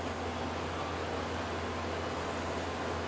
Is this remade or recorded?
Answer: recorded